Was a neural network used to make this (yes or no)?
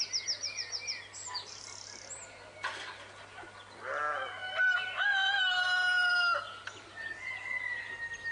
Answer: no